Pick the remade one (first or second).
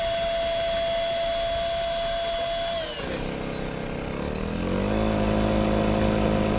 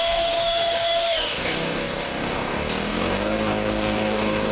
second